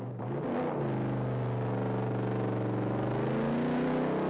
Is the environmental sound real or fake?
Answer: real